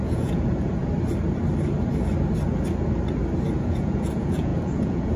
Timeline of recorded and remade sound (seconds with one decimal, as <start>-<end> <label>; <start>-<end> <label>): 0.0-0.8 remade; 0.8-3.5 recorded; 3.5-5.2 remade